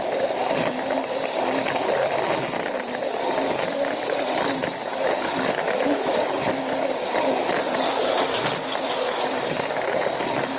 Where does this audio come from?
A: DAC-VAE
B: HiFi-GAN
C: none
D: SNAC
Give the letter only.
C